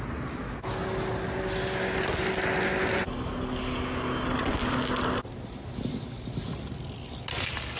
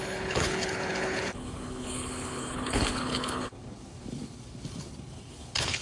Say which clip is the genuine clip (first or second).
first